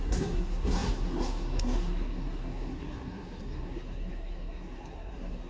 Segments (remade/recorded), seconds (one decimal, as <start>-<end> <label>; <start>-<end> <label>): 0.0-5.5 remade

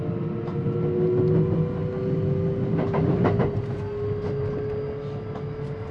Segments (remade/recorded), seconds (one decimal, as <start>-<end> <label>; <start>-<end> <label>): 0.0-5.9 recorded